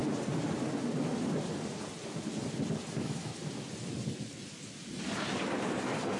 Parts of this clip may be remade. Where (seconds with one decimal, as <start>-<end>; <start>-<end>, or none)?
2.9-3.3